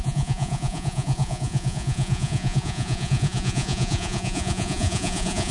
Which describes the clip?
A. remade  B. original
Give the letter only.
A